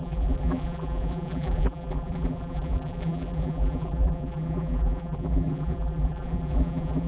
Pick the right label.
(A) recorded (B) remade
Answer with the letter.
B